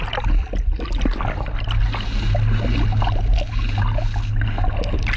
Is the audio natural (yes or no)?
yes